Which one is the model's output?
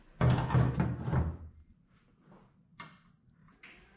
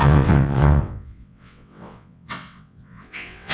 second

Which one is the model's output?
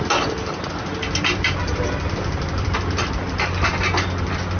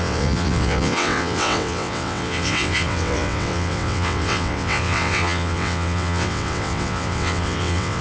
second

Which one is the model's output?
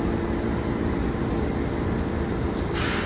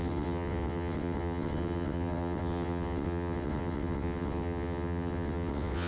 second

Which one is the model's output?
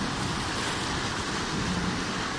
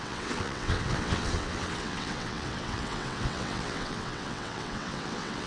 second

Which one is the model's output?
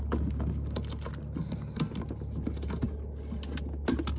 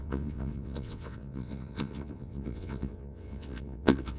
second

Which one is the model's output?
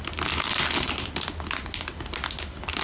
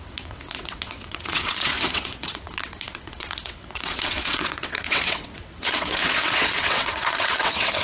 second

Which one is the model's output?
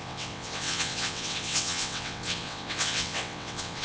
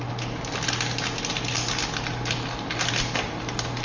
first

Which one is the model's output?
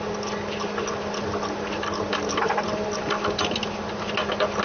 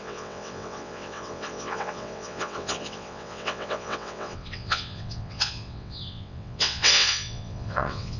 second